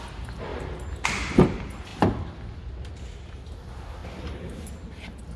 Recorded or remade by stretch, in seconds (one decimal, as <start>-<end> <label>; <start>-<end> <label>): 0.0-5.4 recorded